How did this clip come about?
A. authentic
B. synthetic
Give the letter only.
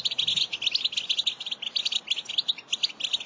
A